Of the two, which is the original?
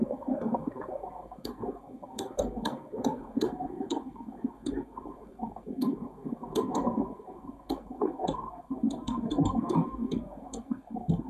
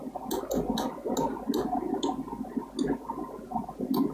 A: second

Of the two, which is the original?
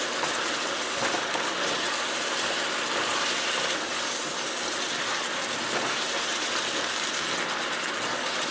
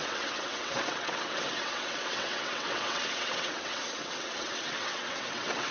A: first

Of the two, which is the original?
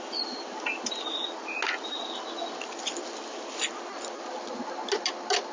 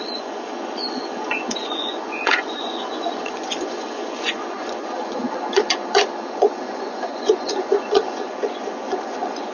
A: first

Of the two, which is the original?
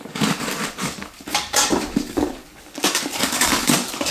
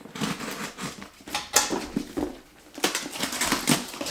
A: second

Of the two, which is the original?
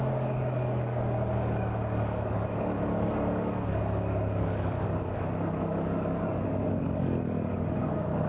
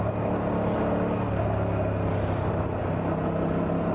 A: second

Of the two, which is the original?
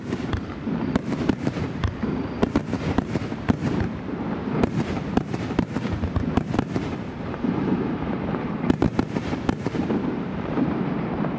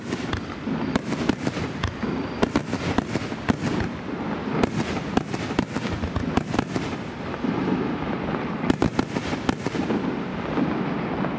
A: second